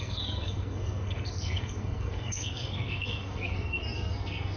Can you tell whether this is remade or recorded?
remade